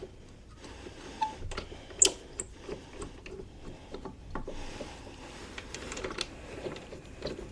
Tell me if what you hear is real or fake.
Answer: real